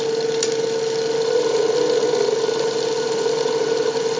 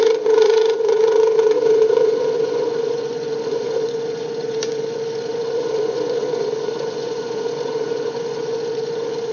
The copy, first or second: second